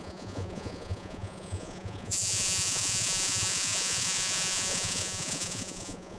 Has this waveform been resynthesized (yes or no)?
yes